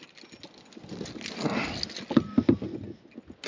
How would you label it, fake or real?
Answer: real